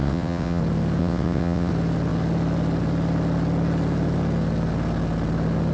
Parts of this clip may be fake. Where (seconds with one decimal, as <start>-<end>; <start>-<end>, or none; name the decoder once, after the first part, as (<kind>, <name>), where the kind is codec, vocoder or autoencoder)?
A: 0.0-0.6 (vocoder, WaveNeXt); 1.0-1.7